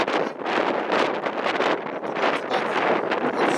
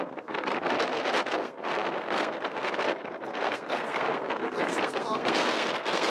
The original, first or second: first